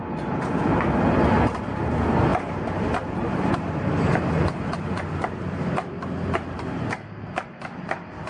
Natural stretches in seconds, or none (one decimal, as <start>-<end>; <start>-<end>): 0.0-2.3; 4.4-8.3